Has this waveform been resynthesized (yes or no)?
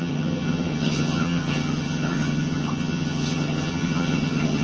yes